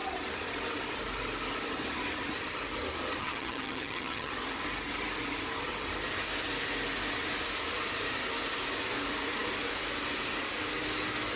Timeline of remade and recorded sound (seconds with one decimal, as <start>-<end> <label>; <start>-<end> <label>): 0.0-3.2 recorded; 3.2-4.3 remade; 4.3-11.4 recorded